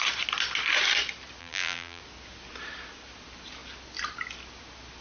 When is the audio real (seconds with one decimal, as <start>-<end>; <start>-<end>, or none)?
0.0-1.4; 2.0-5.0